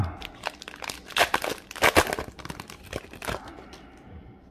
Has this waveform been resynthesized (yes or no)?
no